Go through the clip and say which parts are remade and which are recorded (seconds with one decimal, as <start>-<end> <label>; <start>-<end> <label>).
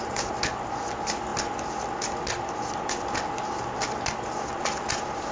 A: 0.0-5.3 recorded